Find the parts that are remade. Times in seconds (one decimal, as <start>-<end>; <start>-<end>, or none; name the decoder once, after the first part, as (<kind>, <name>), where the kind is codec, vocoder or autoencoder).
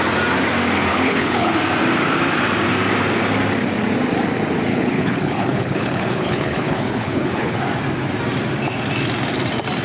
0.9-1.5 (codec, HILCodec); 4.7-7.6